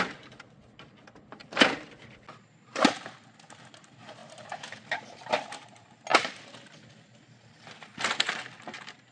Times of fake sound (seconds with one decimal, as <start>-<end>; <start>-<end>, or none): 1.4-1.9; 4.2-5.3; 6.1-9.1